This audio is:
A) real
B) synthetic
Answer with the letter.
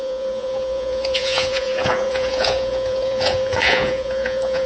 B